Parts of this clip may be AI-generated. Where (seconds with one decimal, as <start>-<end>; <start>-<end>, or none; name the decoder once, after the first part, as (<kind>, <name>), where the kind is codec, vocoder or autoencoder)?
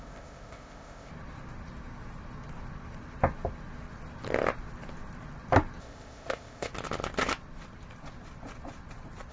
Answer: 0.0-1.1 (codec, ZipCodec); 5.8-6.7